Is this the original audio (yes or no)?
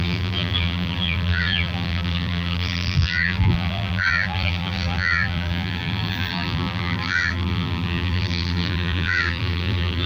no